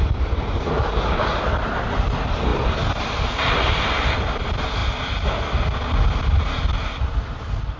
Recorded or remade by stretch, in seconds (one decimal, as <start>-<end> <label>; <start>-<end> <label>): 0.0-7.8 recorded